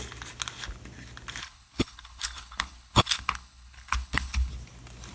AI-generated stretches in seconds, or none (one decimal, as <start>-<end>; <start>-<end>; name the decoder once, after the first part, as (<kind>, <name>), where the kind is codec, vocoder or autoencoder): 1.4-4.5 (codec, HILCodec)

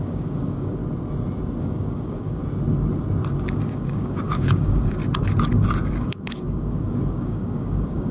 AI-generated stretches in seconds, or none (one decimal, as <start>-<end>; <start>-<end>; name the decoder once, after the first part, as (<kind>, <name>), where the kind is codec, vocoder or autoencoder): 0.0-0.8 (codec, DAC); 1.6-2.4; 3.6-5.0; 5.8-8.1

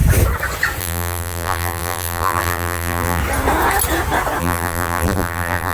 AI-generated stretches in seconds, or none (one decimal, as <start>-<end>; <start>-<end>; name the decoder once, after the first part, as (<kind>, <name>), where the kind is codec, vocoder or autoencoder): 0.8-3.2 (vocoder, BigVGAN v2); 4.4-5.7

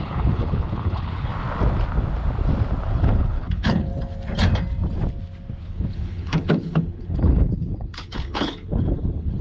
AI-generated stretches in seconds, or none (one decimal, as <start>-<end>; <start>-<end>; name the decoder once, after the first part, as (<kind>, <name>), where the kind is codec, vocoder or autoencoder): 0.0-1.3 (codec, HILCodec); 2.9-3.9; 5.6-9.4

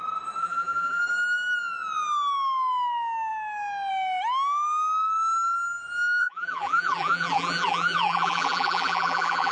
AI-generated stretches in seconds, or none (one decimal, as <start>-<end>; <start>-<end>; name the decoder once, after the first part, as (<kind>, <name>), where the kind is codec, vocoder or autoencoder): 0.4-1.0 (vocoder, BigVGAN v2); 6.2-9.5

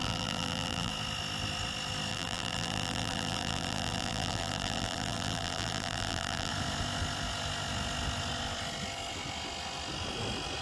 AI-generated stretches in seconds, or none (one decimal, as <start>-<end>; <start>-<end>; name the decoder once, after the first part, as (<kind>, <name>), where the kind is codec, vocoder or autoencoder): 0.0-0.9 (vocoder, BigVGAN v2); 2.1-6.5

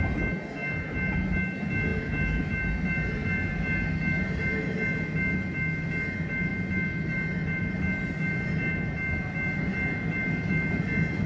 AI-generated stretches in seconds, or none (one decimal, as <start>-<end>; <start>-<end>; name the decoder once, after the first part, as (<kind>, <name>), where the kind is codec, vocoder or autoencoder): none